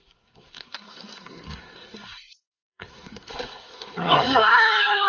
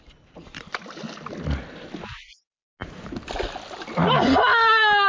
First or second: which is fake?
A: first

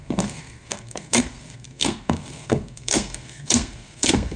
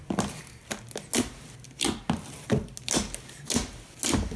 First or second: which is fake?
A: first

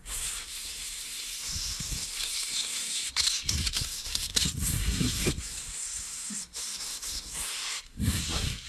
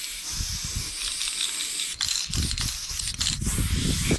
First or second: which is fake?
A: first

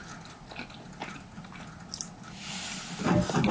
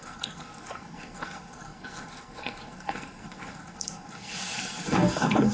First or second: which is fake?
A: second